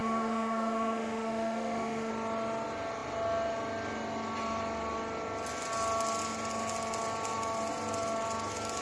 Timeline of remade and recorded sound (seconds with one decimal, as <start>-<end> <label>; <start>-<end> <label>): 0.0-2.1 remade; 2.1-8.8 recorded